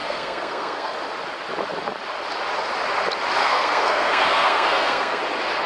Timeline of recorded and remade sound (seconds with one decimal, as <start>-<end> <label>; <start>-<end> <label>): 0.0-0.9 remade; 0.9-3.4 recorded; 3.4-5.2 remade; 5.2-5.7 recorded